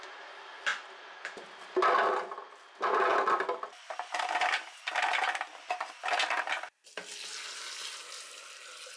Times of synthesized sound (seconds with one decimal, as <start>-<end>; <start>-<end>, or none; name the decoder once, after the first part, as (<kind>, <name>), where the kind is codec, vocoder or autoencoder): 3.1-5.7 (vocoder, BigVGAN v2)